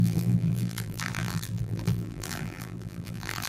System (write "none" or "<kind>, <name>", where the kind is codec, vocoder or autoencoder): vocoder, BigVGAN v2